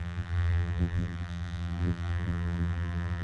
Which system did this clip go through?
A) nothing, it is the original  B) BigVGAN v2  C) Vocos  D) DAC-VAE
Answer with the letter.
B